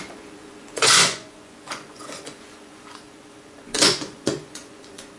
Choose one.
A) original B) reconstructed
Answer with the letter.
B